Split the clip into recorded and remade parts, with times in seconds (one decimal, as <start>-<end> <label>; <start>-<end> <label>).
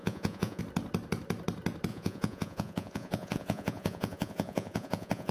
0.0-0.6 remade; 0.6-1.9 recorded; 1.9-5.3 remade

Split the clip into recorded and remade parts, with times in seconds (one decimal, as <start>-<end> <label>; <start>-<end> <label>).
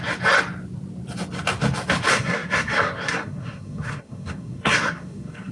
0.0-2.1 recorded; 2.1-5.5 remade